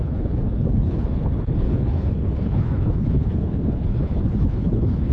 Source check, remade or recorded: remade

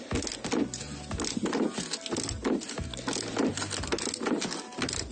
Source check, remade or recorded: recorded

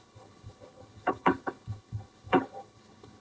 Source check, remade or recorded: remade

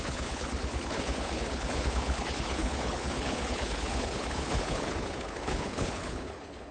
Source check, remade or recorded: remade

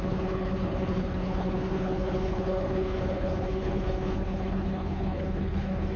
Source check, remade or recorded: remade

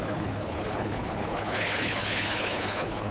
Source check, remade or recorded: remade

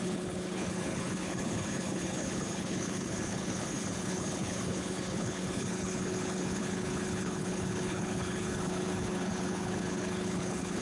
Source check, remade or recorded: remade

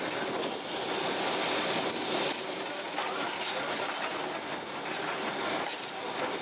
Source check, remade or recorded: recorded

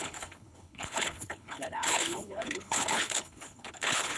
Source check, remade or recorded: remade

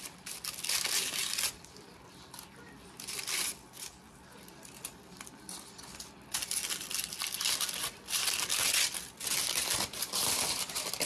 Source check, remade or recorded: recorded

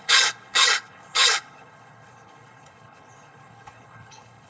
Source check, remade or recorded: remade